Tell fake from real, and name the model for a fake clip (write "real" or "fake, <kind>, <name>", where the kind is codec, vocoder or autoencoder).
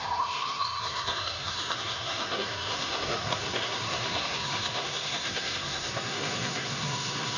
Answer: fake, codec, SNAC